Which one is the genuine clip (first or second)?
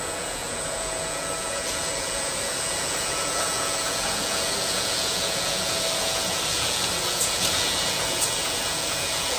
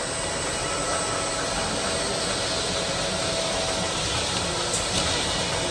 second